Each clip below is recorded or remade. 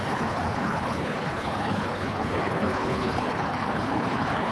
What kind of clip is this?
remade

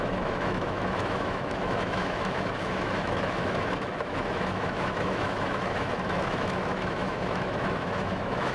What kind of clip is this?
remade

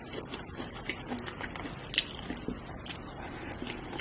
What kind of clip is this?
recorded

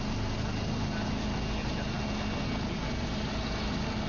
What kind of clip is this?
recorded